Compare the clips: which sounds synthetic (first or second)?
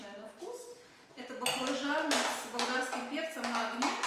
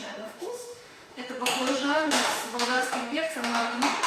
second